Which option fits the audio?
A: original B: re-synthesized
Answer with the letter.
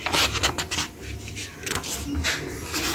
A